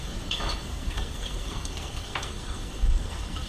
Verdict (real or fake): fake